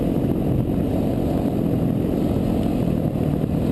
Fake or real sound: fake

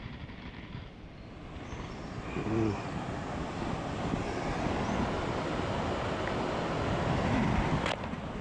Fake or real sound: real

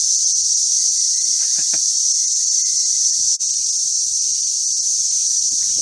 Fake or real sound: fake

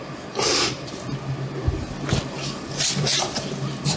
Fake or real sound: fake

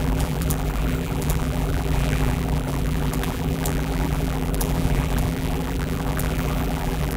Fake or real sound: fake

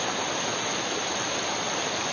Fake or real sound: real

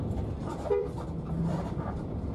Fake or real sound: fake